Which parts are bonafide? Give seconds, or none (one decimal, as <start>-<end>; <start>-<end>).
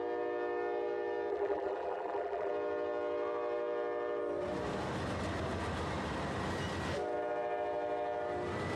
0.0-1.3; 2.5-8.8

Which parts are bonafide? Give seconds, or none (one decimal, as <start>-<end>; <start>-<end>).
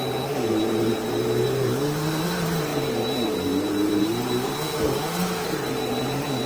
none